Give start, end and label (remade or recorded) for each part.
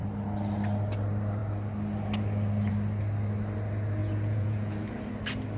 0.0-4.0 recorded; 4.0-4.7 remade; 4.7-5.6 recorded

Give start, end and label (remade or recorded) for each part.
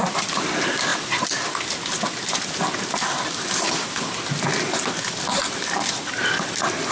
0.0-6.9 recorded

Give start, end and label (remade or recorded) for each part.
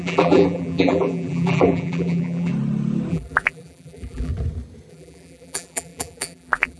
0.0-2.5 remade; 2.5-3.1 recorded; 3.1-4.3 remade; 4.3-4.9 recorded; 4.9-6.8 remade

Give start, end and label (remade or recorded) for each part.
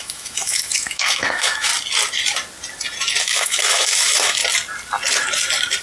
0.0-1.7 remade; 1.7-3.2 recorded; 3.2-4.4 remade; 4.4-5.8 recorded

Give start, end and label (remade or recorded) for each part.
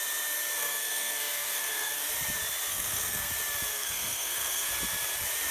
0.0-0.6 recorded; 0.6-2.1 remade; 2.1-2.7 recorded; 2.7-3.3 remade; 3.3-3.7 recorded; 3.7-4.7 remade; 4.7-5.5 recorded